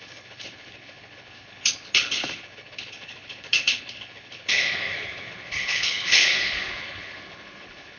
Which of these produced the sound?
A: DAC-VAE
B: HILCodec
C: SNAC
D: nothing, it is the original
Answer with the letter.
B